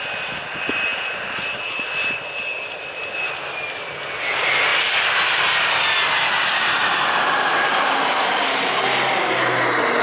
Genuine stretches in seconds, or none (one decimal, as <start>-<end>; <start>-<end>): 0.0-10.0